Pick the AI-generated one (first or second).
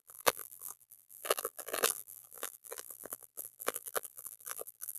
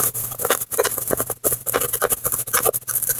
first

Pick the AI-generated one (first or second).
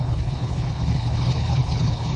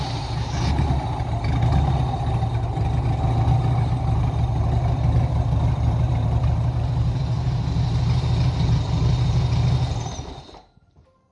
first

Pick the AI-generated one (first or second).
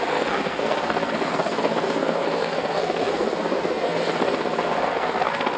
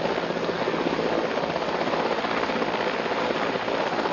first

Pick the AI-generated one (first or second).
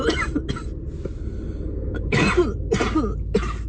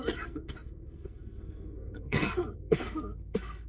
second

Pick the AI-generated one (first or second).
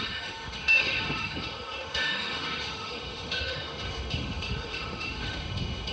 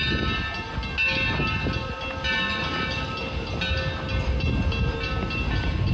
first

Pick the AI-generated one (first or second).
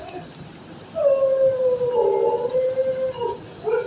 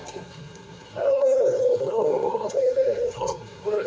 second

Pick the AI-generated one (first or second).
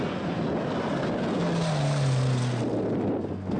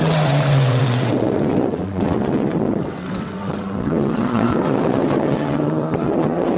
second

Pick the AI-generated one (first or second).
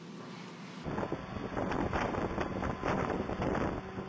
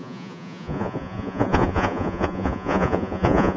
second